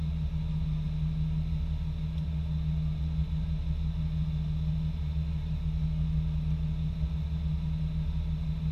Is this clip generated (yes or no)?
no